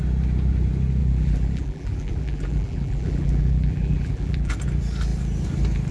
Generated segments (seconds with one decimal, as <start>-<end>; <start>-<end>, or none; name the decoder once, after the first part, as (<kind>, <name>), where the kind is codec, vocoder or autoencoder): 1.0-4.5 (vocoder, BigVGAN v2)